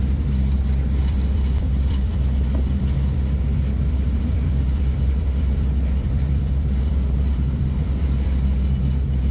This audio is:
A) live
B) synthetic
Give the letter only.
B